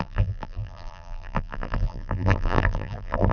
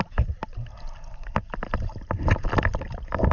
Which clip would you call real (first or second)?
second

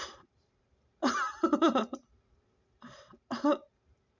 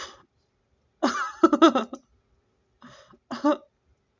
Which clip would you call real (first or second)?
second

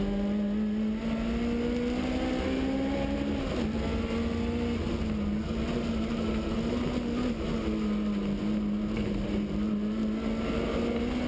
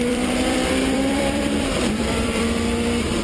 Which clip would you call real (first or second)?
first